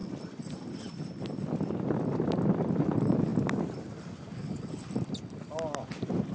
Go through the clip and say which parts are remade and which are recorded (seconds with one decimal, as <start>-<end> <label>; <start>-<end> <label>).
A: 0.0-6.3 recorded